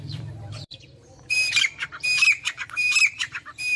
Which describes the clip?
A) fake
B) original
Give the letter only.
A